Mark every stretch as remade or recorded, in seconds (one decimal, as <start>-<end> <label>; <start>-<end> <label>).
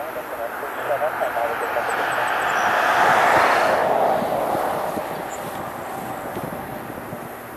0.0-7.6 recorded